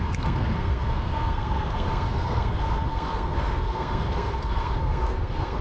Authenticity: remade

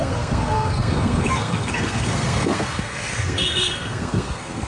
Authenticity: remade